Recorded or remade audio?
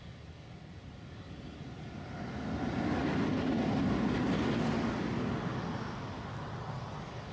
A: recorded